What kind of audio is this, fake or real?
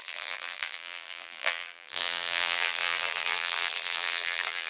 fake